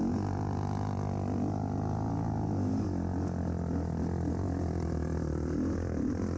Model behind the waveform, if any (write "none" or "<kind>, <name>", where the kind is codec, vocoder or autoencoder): none